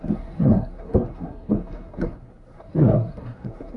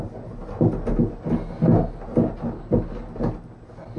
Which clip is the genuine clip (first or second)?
second